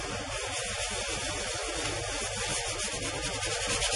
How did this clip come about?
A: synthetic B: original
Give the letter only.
B